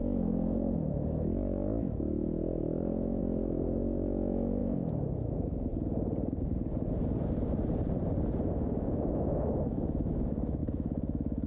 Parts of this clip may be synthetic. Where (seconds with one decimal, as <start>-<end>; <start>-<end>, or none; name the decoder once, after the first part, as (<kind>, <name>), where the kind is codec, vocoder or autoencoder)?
0.0-5.7 (autoencoder, DAC-VAE); 8.7-11.5